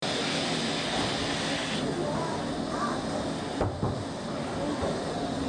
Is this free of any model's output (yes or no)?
yes